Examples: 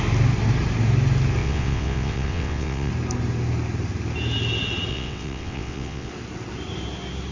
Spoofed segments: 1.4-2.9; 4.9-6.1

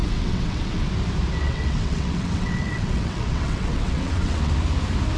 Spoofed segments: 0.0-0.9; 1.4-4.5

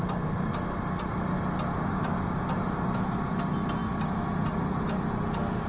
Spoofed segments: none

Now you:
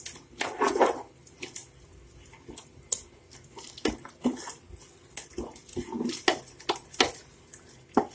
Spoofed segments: none

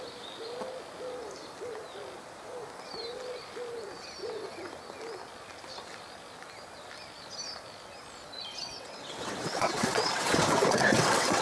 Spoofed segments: 4.2-4.7; 8.5-11.4